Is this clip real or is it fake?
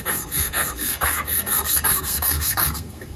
fake